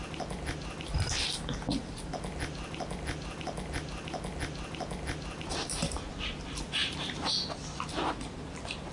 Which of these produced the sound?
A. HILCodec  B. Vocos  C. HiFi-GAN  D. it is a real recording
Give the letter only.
D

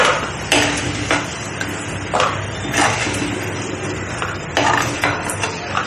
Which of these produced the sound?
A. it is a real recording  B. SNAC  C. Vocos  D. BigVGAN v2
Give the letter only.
A